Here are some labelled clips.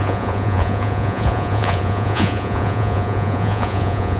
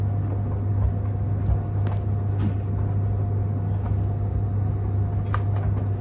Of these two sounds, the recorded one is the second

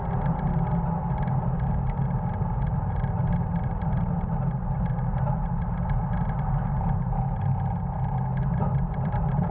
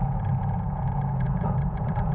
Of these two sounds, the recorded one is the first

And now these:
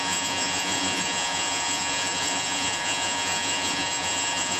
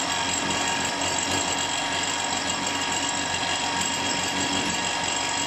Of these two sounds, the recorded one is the second